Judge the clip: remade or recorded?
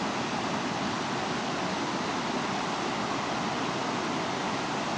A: recorded